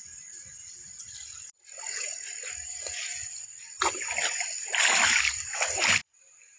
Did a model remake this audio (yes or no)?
no